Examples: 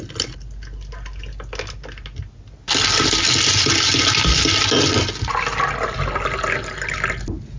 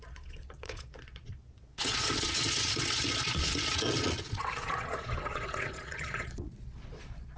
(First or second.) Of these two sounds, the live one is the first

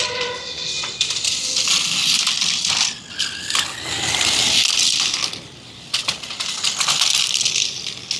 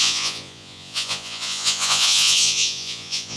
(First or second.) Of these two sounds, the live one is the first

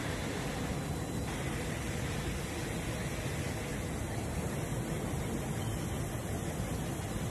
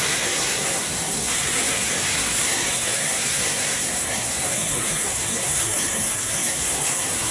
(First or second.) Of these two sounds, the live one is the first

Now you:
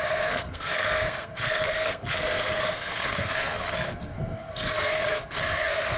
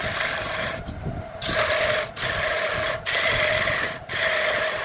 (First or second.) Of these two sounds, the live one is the second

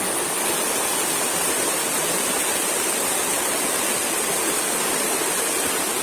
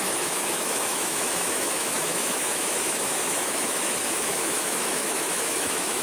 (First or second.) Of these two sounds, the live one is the first